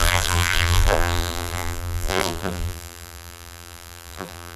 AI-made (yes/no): yes